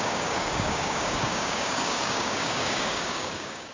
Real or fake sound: fake